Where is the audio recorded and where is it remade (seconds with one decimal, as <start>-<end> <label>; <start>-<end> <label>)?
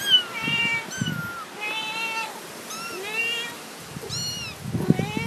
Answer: 0.0-5.3 recorded